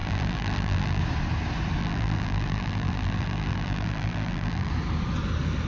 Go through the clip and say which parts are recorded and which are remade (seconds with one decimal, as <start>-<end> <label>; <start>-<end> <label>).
0.0-1.0 remade; 1.0-1.8 recorded; 1.8-4.7 remade; 4.7-5.7 recorded